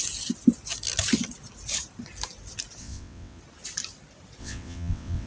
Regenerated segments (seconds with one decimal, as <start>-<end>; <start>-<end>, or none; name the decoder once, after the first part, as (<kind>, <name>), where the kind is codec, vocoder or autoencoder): 2.8-3.4 (vocoder, WaveNeXt); 4.4-5.3